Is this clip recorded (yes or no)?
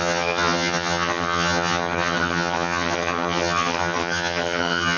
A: no